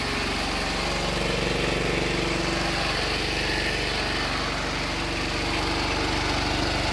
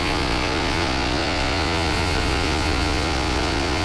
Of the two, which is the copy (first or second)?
second